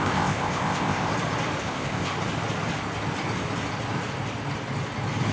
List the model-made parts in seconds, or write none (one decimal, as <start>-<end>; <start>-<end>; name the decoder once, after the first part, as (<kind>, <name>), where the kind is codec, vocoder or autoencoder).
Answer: 0.0-1.1 (codec, ZipCodec); 1.6-2.1

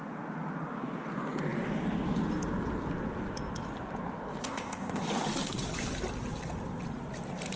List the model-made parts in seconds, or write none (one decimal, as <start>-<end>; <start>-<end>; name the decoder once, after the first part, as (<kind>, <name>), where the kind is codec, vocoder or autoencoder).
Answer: 4.4-5.0 (codec, ZipCodec)

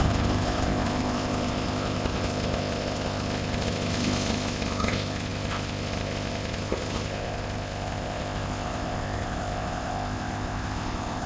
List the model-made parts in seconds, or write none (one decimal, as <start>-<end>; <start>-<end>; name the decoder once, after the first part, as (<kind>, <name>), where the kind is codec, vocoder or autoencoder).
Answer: 0.0-11.3 (codec, ZipCodec)

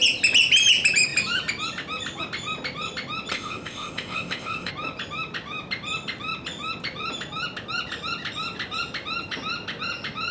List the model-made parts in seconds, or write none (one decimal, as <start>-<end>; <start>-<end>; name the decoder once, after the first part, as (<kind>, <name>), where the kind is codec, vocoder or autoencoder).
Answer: 3.3-4.7 (codec, ZipCodec)

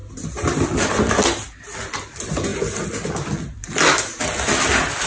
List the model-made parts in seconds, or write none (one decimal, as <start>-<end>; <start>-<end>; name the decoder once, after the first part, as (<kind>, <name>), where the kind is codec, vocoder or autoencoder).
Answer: none